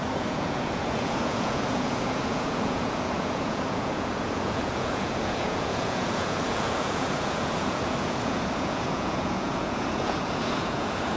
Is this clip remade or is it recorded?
remade